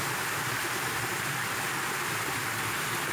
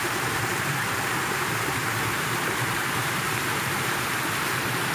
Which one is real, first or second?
first